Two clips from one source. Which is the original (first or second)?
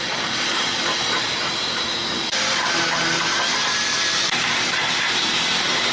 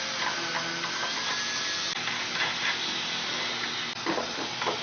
second